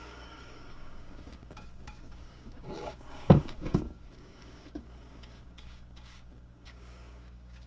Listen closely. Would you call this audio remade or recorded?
remade